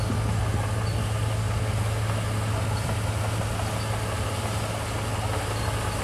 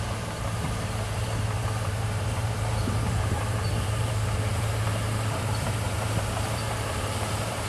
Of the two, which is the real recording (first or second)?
first